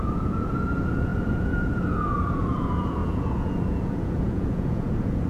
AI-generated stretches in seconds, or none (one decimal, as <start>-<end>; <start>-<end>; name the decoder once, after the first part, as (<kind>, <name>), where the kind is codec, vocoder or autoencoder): 0.0-5.3 (vocoder, Vocos)